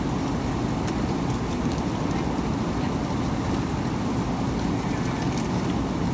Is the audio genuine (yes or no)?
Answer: yes